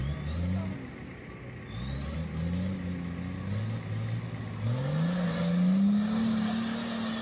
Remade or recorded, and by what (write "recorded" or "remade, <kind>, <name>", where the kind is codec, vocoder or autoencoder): recorded